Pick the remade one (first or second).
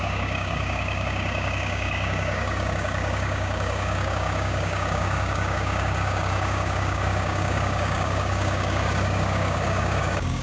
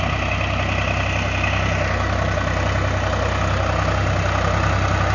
first